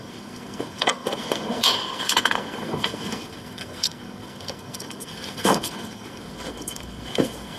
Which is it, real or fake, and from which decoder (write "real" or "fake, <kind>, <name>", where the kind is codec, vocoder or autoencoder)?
fake, codec, SNAC